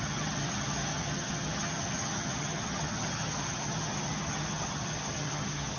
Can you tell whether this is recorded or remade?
remade